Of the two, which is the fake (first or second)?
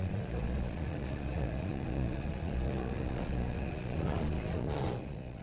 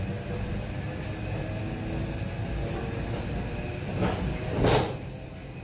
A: first